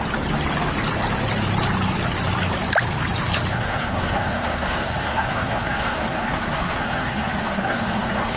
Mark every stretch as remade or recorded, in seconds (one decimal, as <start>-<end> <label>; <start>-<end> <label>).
0.0-3.5 recorded; 3.5-8.4 remade